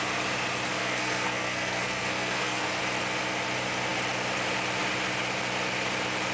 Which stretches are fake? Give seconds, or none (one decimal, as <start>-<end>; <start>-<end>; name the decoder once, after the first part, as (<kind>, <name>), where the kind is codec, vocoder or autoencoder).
0.8-2.8 (codec, SNAC)